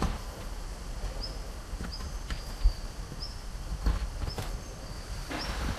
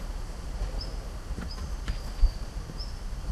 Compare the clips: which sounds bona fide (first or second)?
first